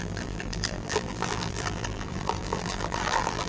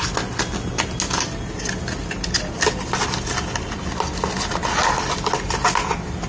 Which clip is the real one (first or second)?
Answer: second